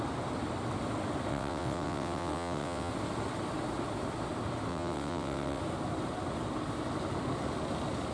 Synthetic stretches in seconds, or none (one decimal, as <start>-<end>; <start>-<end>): 1.3-2.9; 4.7-5.6